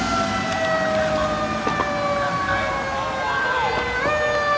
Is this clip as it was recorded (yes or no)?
yes